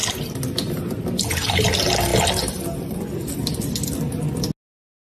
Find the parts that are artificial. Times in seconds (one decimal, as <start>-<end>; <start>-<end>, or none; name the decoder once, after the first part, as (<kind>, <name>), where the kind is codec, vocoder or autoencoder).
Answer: 0.0-0.8 (vocoder, BigVGAN v2)